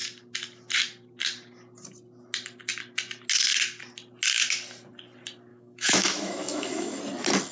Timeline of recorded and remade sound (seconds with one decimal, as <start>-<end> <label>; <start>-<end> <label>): 0.0-5.5 recorded; 5.5-7.0 remade; 7.0-7.5 recorded